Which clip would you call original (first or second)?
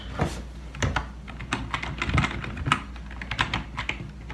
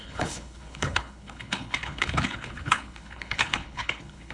first